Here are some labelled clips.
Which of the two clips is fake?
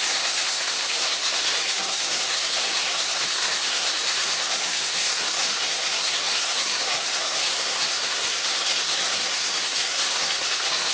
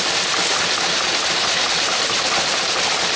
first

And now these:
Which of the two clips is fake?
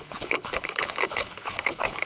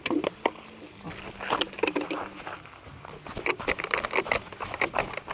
first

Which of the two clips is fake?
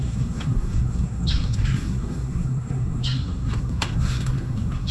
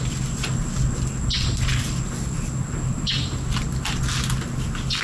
first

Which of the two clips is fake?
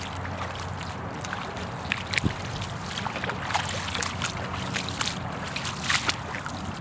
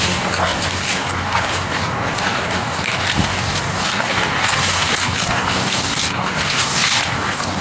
second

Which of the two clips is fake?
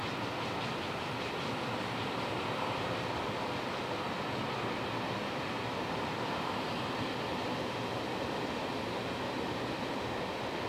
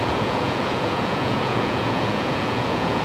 second